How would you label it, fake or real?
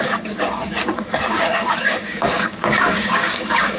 fake